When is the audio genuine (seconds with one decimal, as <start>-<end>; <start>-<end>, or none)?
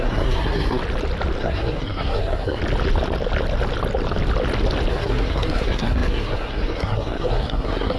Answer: 0.8-1.4; 2.6-4.9